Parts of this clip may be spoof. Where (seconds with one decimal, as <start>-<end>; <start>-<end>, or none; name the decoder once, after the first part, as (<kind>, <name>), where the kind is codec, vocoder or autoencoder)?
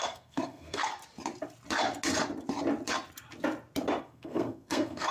0.0-0.9 (codec, SNAC); 4.0-5.1